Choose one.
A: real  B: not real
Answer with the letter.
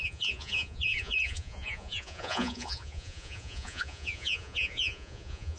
B